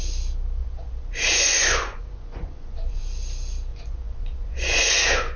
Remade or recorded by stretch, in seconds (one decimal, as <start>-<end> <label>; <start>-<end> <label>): 0.0-0.6 recorded; 0.6-3.0 remade; 3.0-3.7 recorded; 3.7-5.4 remade